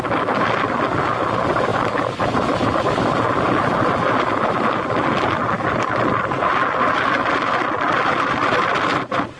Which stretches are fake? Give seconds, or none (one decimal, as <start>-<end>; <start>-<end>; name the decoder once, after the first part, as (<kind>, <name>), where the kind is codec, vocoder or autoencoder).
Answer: none